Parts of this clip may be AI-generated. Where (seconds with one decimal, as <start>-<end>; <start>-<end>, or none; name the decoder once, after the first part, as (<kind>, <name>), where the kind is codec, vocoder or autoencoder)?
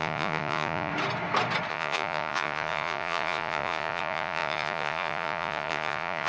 0.0-0.9 (vocoder, Vocos); 1.7-6.3